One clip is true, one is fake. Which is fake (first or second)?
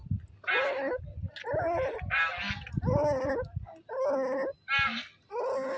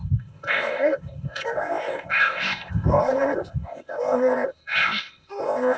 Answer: second